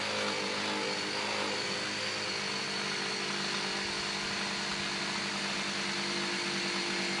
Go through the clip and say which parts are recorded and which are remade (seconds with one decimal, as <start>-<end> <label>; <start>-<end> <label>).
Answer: 0.0-7.2 recorded